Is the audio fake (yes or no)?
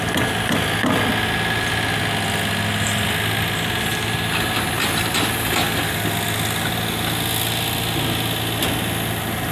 no